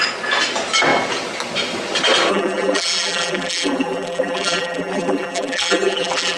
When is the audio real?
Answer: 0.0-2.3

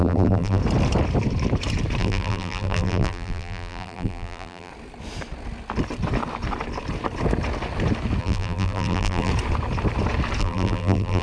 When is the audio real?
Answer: 0.6-2.0; 4.7-8.2; 9.3-10.4

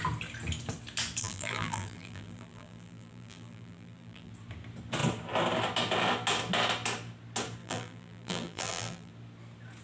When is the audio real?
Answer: 0.0-1.2; 4.3-7.6; 9.1-9.8

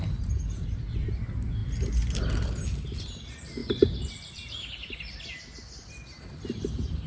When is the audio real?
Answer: 0.0-3.6; 5.0-7.1